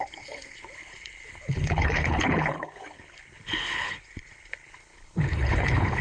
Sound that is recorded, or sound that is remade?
remade